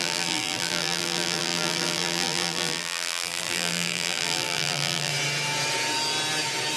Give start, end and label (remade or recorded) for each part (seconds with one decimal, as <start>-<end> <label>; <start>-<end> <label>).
0.0-5.1 remade; 5.1-6.8 recorded